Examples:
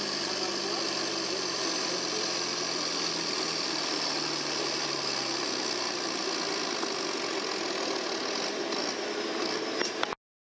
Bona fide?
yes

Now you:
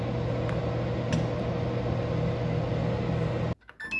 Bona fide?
yes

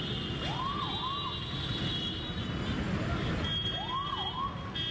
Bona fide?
yes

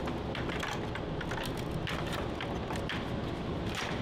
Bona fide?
yes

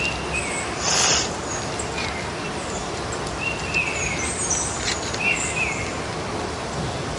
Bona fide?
yes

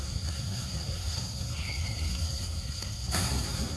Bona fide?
no